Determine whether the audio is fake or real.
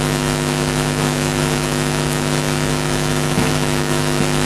fake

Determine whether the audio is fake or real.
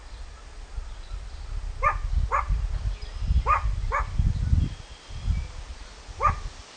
real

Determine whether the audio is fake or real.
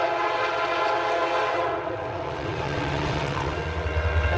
fake